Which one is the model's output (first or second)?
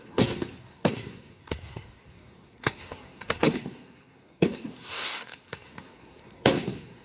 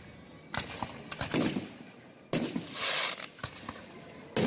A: first